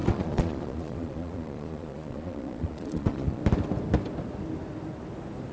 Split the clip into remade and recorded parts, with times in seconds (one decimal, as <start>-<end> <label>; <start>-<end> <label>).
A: 0.0-3.4 remade; 3.4-5.5 recorded